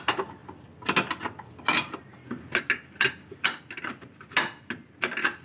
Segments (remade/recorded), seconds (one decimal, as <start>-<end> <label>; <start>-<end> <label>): 0.0-5.4 recorded